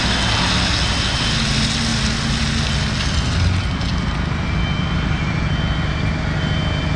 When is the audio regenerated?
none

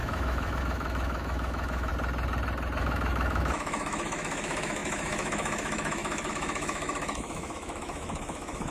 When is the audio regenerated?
0.0-1.9 (autoencoder, DAC-VAE); 2.8-8.7

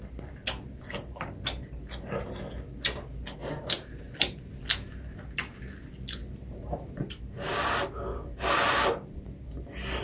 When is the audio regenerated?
3.4-4.6 (vocoder, BigVGAN v2); 6.2-7.0

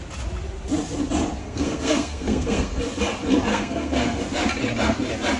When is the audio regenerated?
1.4-2.8 (codec, SNAC); 3.5-4.2

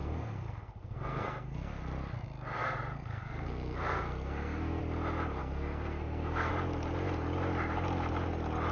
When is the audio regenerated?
0.0-1.8 (codec, SNAC); 2.6-4.8; 5.4-6.5

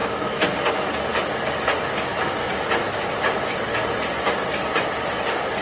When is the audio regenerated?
none

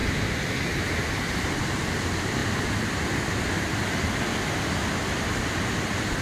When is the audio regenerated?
none

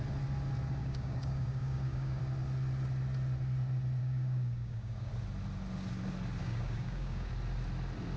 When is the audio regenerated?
0.8-2.2 (codec, DAC); 4.0-5.1; 6.4-7.3